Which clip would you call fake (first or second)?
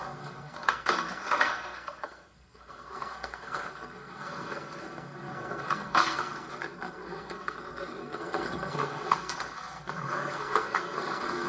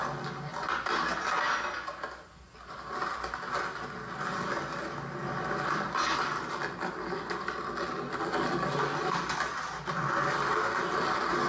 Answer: first